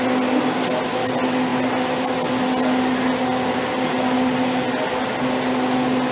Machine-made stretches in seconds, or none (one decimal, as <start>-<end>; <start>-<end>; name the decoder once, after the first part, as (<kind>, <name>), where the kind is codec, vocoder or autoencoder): none